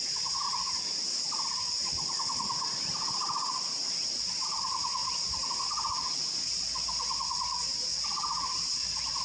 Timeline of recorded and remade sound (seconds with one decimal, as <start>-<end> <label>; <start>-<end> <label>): 0.0-9.2 recorded